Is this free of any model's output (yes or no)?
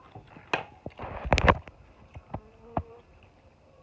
yes